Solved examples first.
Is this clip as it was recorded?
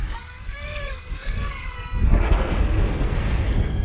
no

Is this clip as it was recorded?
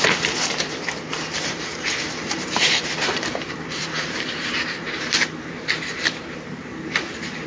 no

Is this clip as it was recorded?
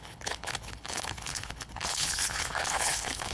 no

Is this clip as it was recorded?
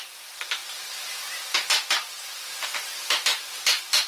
yes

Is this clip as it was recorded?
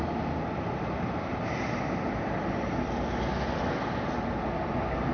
yes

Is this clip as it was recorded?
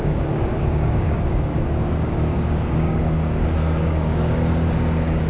no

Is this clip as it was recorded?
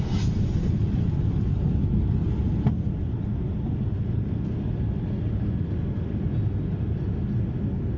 yes